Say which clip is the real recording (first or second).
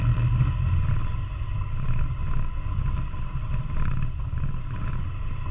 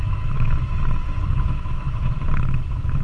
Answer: first